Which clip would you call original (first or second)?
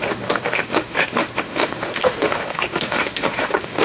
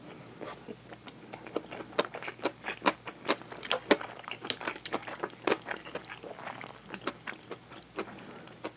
second